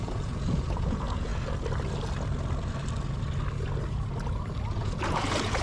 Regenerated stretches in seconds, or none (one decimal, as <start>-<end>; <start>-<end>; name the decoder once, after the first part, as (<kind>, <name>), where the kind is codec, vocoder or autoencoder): 0.0-1.3 (vocoder, Vocos); 4.7-5.6